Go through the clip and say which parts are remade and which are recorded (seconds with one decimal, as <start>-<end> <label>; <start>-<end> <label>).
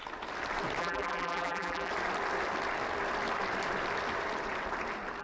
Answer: 0.0-0.8 recorded; 0.8-1.9 remade; 1.9-5.2 recorded